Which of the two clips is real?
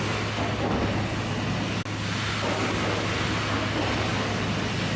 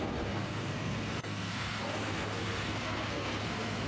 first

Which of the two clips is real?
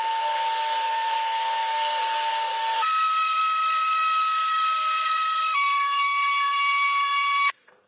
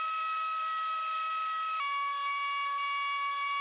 second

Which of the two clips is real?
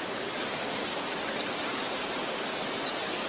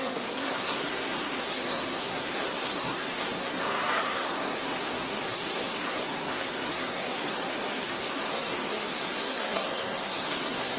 first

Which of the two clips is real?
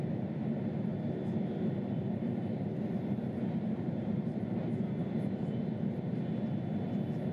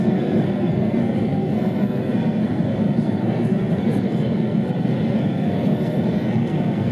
first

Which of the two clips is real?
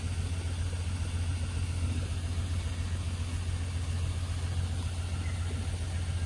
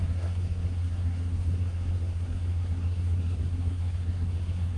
first